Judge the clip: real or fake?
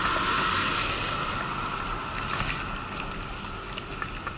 real